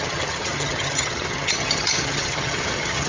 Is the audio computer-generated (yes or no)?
yes